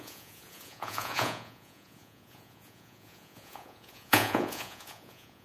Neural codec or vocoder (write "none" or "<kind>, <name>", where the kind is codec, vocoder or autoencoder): vocoder, Vocos